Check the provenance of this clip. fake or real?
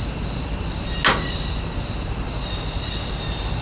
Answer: real